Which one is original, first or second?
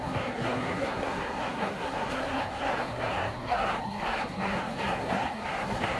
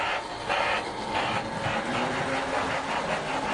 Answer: second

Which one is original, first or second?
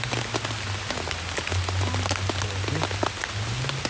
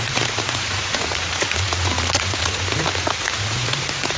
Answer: first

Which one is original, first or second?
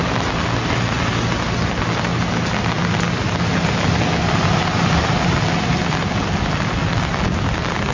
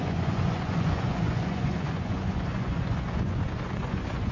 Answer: first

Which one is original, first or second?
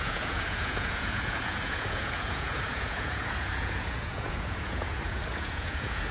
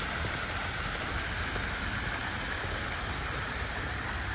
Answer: second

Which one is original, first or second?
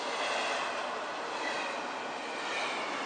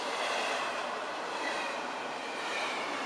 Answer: first